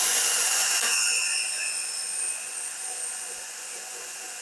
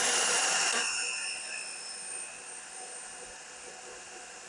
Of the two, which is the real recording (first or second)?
second